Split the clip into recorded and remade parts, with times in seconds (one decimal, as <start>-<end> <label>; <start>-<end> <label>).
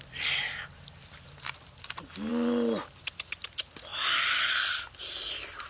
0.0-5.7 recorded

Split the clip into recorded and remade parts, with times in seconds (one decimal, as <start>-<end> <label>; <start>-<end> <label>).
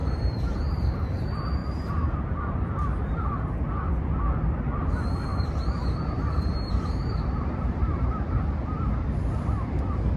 0.0-1.0 remade; 1.0-1.6 recorded; 1.6-2.4 remade; 2.4-5.3 recorded; 5.3-8.4 remade; 8.4-10.2 recorded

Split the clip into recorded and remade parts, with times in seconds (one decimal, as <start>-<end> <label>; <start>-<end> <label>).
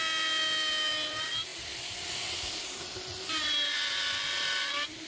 0.0-5.1 recorded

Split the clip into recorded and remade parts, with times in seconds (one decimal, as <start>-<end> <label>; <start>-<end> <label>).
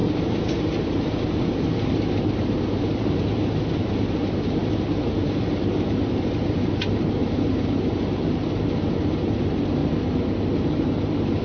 0.0-9.8 remade; 9.8-10.5 recorded; 10.5-11.4 remade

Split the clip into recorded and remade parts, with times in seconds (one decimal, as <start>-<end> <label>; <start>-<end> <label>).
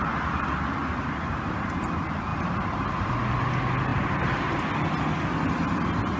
0.0-0.8 recorded; 0.8-1.8 remade; 1.8-2.3 recorded; 2.3-3.1 remade; 3.1-3.9 recorded; 3.9-4.5 remade; 4.5-6.2 recorded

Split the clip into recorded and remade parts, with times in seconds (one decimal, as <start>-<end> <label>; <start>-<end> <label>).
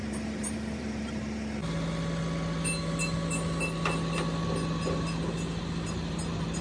0.0-1.2 remade; 1.2-6.6 recorded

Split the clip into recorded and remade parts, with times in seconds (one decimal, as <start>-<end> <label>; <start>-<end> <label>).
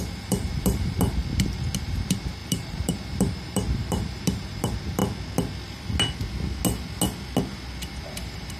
0.0-1.2 remade; 1.2-1.8 recorded; 1.8-5.0 remade; 5.0-7.9 recorded; 7.9-8.6 remade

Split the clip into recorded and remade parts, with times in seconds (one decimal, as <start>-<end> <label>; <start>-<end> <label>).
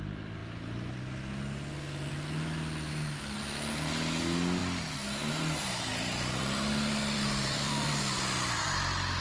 0.0-5.9 recorded; 5.9-8.0 remade; 8.0-9.2 recorded